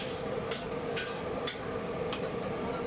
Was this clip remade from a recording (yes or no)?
yes